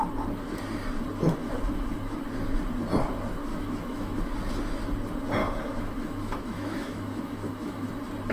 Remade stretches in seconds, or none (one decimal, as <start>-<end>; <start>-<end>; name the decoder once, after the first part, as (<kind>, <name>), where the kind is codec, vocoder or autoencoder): 1.4-2.2 (autoencoder, DAC-VAE); 3.5-4.2; 5.4-7.9

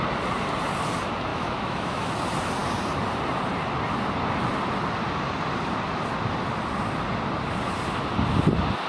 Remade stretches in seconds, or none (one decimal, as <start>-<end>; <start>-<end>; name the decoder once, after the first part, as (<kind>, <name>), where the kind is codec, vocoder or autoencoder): 1.3-2.1 (autoencoder, DAC-VAE)

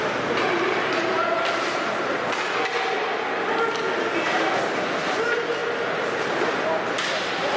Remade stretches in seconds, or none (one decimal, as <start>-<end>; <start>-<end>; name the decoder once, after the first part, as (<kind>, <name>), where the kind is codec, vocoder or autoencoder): none

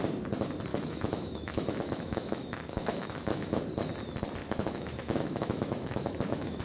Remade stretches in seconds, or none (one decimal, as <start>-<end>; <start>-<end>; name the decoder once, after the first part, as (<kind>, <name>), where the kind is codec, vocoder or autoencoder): 0.7-3.6 (autoencoder, DAC-VAE); 4.4-6.6

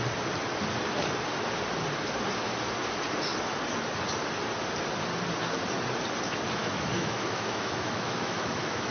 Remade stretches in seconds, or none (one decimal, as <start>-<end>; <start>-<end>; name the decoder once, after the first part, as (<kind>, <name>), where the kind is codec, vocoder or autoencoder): 6.6-8.9 (autoencoder, DAC-VAE)